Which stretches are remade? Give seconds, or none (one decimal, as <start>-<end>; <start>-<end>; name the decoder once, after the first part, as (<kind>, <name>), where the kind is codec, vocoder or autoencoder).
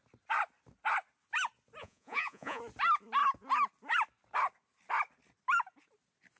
1.8-2.6 (vocoder, Vocos)